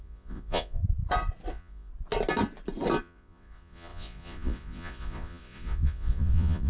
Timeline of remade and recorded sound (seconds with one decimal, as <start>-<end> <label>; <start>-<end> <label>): 0.0-0.8 remade; 0.8-1.5 recorded; 1.5-1.9 remade; 1.9-3.0 recorded; 3.0-6.7 remade